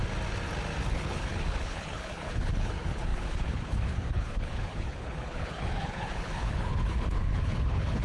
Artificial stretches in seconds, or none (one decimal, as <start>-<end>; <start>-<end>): 0.9-8.0